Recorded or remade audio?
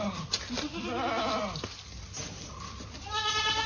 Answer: recorded